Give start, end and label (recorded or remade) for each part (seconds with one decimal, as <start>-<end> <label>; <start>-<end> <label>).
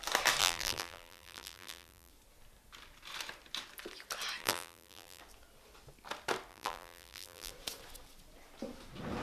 0.0-0.4 recorded; 0.4-2.1 remade; 2.1-4.4 recorded; 4.4-5.2 remade; 5.2-6.5 recorded; 6.5-7.5 remade; 7.5-9.2 recorded